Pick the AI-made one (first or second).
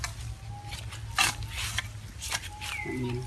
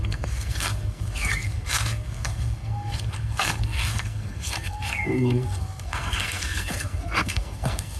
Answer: second